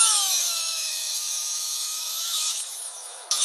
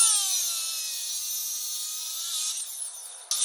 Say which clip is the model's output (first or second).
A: first